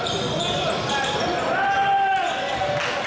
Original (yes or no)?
yes